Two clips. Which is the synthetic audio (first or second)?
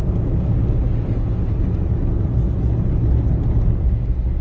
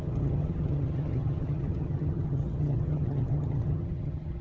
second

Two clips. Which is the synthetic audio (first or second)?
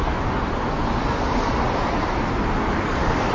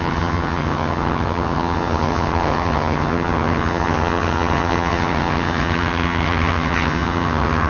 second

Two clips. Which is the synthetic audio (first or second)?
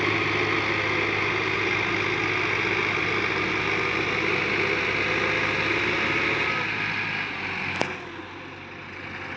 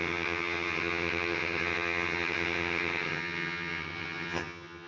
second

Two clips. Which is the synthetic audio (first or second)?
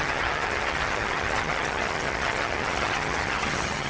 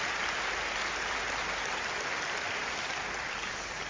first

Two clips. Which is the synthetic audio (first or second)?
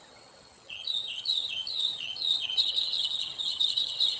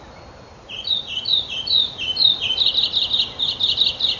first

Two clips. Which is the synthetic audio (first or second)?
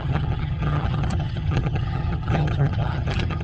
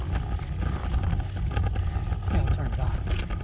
first